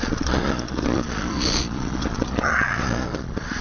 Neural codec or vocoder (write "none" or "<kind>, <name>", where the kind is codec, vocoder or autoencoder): vocoder, Vocos